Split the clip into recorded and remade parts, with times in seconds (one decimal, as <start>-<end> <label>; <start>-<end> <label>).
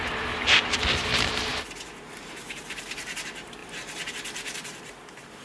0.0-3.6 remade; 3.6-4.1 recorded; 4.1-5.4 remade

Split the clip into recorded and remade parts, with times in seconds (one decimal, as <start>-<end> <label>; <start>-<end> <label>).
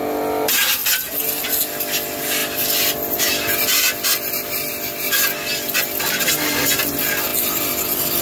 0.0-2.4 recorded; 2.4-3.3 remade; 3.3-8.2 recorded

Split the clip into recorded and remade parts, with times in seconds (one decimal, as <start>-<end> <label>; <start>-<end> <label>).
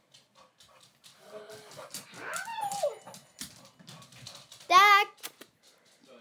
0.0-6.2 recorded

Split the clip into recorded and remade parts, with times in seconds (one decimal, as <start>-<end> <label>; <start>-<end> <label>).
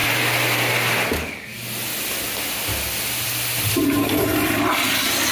0.0-0.7 remade; 0.7-5.3 recorded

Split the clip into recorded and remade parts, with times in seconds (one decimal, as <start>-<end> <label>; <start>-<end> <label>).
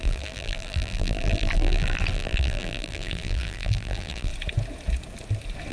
0.0-4.3 remade; 4.3-5.7 recorded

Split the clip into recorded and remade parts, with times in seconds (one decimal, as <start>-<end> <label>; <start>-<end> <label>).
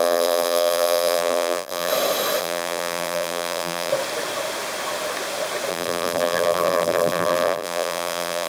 0.0-1.9 remade; 1.9-2.4 recorded; 2.4-3.9 remade; 3.9-5.7 recorded; 5.7-8.5 remade